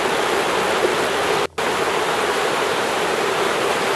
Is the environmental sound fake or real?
real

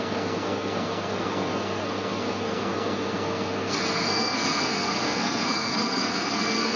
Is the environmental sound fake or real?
fake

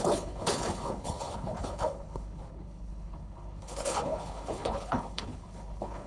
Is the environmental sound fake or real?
fake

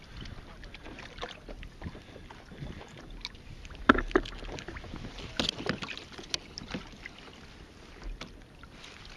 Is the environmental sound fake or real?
real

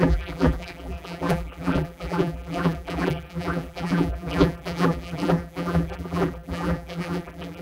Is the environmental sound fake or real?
fake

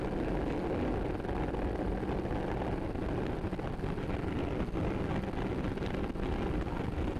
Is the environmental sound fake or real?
real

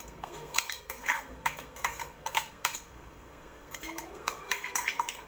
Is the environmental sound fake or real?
fake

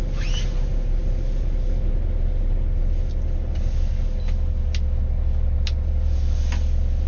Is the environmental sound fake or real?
real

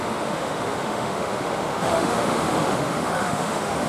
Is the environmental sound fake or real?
fake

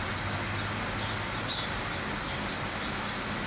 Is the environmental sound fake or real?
real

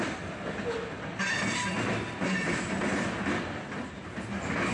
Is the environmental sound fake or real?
real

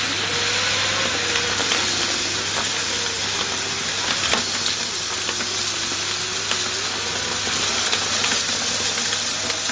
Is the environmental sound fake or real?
real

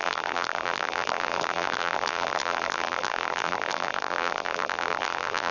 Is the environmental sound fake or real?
fake